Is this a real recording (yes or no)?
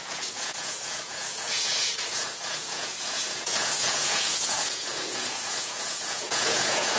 no